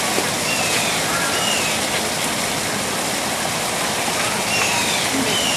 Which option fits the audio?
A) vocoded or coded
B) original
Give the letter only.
B